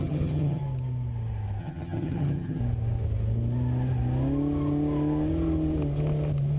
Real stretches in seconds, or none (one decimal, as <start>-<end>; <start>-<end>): 0.6-1.6; 2.6-6.6